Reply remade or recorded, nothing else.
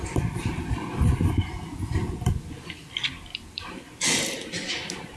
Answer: recorded